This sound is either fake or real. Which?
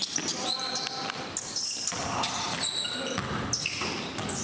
real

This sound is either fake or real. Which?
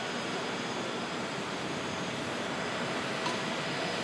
real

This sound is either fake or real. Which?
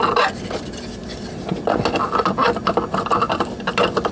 real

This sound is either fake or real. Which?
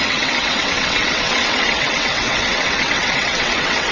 fake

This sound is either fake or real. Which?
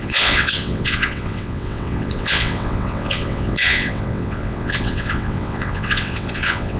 fake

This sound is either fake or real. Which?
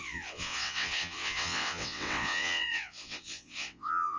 fake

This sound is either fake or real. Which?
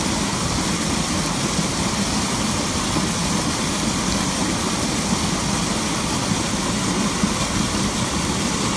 real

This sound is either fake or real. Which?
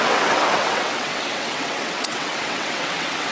fake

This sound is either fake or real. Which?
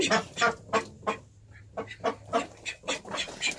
real